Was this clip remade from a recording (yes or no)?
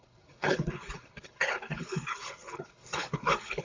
yes